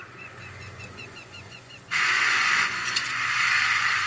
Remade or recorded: remade